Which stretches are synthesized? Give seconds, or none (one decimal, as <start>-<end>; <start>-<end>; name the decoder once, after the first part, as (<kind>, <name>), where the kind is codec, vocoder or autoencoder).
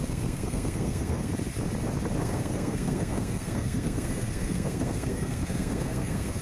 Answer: 0.0-1.3 (codec, SNAC); 2.2-6.4